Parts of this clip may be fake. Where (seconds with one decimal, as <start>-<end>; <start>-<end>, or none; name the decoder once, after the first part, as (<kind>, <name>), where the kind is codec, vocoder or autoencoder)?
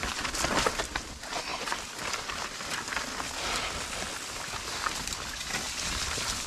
none